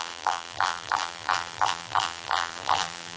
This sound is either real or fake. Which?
fake